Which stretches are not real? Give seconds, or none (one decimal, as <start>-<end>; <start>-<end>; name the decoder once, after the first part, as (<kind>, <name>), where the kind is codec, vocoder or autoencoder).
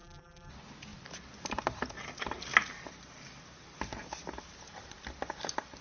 0.0-0.5 (vocoder, BigVGAN v2)